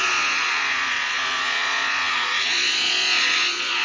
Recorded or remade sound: remade